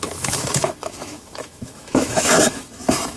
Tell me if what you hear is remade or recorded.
remade